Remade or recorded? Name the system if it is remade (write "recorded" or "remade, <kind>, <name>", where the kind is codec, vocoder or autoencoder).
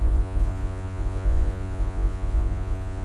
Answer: remade, vocoder, Vocos